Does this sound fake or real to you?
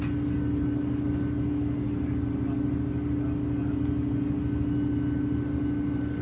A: real